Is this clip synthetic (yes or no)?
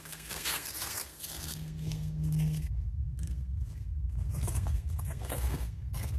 yes